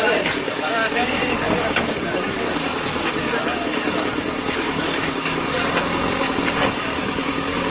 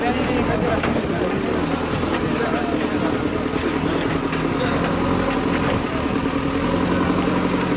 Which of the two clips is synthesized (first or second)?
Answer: first